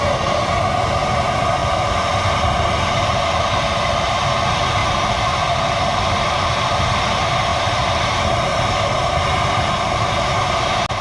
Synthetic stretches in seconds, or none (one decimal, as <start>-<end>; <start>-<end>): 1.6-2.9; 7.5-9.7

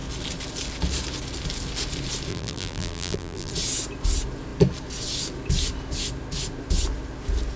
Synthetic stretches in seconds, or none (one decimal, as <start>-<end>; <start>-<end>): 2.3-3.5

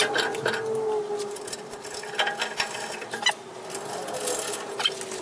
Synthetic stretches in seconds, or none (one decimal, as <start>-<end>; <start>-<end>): none

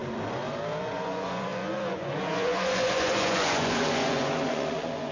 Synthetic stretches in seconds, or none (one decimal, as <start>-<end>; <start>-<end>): 0.8-5.1

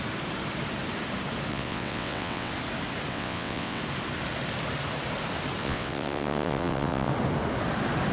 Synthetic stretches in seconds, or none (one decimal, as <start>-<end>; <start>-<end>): 1.5-2.5; 3.1-3.8; 5.6-7.1